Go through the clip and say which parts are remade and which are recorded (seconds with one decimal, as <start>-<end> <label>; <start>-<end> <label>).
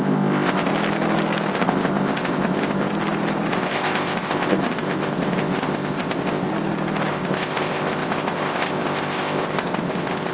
0.0-0.7 remade; 0.7-1.5 recorded; 1.5-2.9 remade; 2.9-3.5 recorded; 3.5-6.5 remade; 6.5-7.1 recorded; 7.1-10.3 remade